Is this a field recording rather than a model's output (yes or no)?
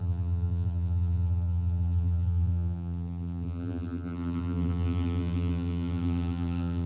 no